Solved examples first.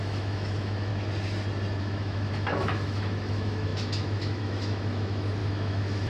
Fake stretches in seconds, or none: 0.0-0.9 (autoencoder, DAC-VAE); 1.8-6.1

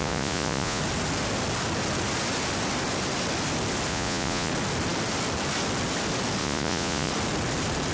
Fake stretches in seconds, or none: 0.0-0.8 (vocoder, Vocos); 3.9-4.5; 6.4-7.1

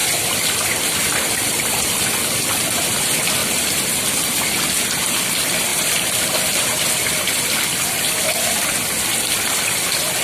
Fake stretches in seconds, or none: 0.0-1.9 (vocoder, BigVGAN v2); 5.7-7.1

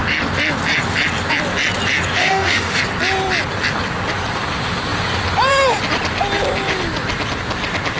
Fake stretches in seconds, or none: 2.2-2.8 (autoencoder, DAC-VAE)